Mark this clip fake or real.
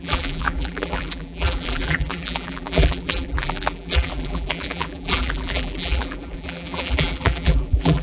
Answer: fake